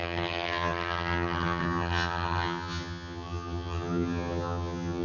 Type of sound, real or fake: fake